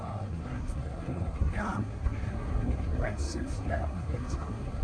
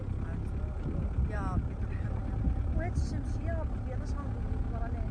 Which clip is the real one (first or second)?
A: second